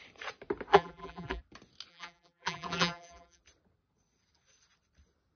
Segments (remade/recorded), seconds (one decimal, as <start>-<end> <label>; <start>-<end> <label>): 0.0-0.7 recorded; 0.7-1.4 remade; 1.4-1.9 recorded; 1.9-3.4 remade; 3.4-5.4 recorded